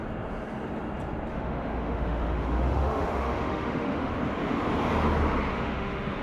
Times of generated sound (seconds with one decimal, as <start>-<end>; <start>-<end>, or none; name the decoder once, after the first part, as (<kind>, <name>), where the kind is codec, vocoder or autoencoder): 1.3-4.1 (autoencoder, DAC-VAE); 5.5-6.2